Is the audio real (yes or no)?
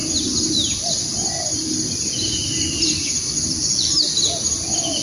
yes